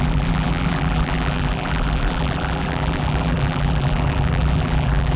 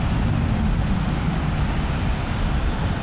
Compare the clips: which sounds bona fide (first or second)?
second